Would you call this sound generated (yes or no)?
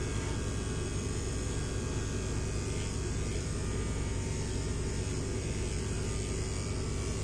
no